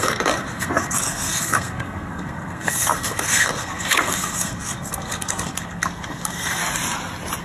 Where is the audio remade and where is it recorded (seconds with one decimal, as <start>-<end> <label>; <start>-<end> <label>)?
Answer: 0.0-6.6 remade; 6.6-7.4 recorded